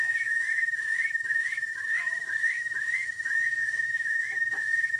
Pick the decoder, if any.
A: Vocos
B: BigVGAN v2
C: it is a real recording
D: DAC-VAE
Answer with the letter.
D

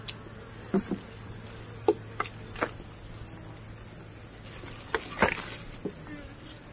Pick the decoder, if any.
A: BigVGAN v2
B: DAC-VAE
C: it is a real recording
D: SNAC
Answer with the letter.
C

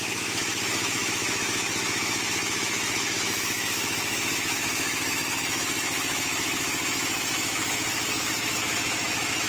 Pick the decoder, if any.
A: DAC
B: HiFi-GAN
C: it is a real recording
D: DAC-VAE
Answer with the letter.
D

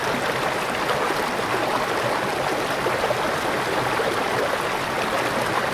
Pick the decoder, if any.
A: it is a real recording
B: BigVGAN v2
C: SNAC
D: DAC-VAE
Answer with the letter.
A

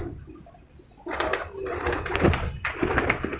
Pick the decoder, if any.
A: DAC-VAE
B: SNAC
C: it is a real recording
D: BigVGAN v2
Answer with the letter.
C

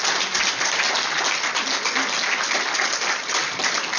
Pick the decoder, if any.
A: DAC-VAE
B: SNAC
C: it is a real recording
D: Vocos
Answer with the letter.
C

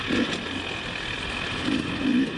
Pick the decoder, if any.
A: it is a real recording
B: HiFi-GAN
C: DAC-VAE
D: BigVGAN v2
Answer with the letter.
A